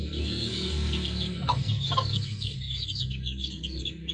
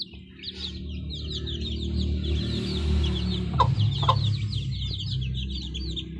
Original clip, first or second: second